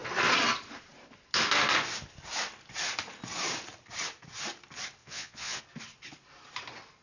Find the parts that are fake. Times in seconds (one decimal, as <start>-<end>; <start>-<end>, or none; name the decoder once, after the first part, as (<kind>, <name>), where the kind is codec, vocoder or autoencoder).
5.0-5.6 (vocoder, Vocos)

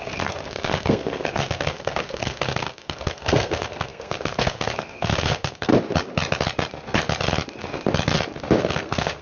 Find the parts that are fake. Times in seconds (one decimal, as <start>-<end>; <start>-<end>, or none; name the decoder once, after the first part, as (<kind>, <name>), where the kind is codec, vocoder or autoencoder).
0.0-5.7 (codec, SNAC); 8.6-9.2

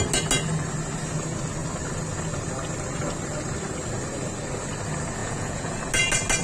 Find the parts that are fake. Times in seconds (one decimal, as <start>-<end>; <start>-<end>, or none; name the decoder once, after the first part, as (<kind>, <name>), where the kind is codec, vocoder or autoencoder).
5.2-5.8 (vocoder, Vocos)